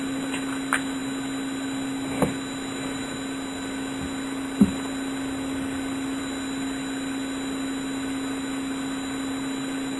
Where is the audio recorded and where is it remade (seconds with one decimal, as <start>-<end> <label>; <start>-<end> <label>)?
0.0-10.0 recorded